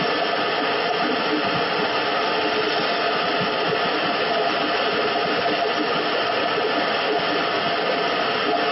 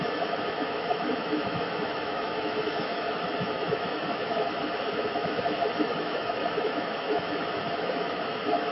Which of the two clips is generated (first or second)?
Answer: second